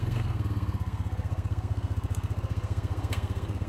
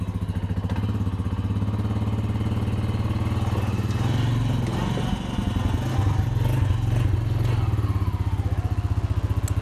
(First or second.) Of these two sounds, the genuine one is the second